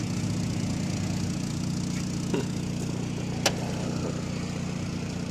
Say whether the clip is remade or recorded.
recorded